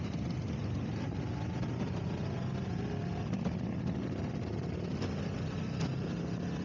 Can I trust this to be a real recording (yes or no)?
yes